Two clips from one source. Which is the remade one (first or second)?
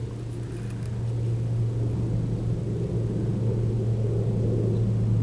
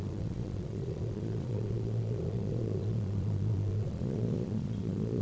second